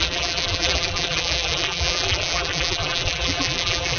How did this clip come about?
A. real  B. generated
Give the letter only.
B